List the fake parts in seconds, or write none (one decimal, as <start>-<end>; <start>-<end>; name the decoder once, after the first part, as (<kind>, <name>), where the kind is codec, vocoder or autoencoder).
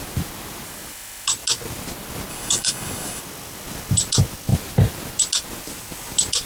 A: 2.3-3.2 (codec, DAC)